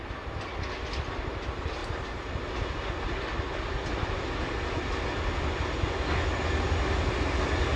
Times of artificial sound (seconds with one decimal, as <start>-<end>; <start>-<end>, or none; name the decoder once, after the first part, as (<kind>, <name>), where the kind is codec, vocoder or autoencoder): 1.8-2.4 (vocoder, BigVGAN v2)